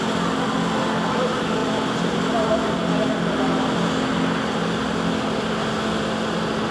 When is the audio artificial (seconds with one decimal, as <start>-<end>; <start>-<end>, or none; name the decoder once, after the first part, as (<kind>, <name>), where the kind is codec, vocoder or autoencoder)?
none